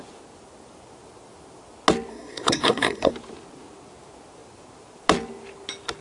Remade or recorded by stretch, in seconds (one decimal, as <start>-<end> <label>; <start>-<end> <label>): 0.0-2.1 recorded; 2.1-3.1 remade; 3.1-6.0 recorded